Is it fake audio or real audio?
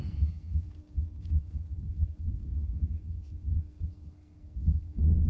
fake